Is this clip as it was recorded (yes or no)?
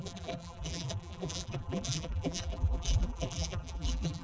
no